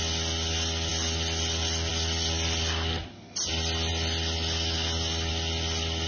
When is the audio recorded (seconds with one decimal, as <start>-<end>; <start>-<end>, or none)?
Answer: 0.0-6.1